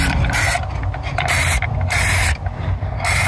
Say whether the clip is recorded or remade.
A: recorded